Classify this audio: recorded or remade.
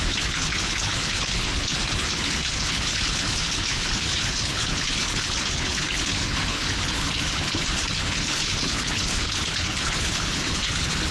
remade